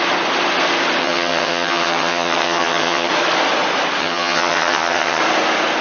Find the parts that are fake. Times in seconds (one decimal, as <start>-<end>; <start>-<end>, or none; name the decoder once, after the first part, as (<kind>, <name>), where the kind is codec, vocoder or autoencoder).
1.0-3.1 (vocoder, HiFi-GAN); 4.0-5.2